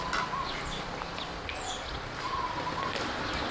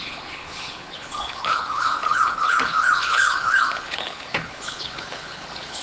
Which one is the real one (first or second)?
first